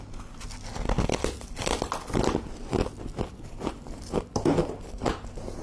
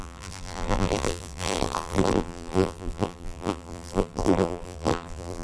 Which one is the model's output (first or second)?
second